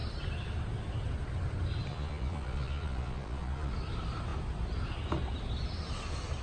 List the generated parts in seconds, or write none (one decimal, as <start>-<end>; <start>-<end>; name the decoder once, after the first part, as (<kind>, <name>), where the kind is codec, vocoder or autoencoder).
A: 1.9-3.7 (vocoder, Vocos)